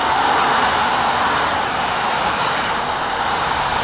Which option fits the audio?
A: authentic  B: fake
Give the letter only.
A